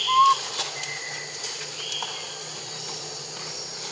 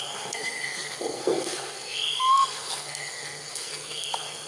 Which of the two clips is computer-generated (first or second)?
second